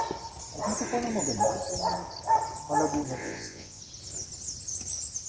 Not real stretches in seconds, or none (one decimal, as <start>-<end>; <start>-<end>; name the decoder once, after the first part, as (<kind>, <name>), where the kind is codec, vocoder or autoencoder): 3.2-3.8 (vocoder, Vocos)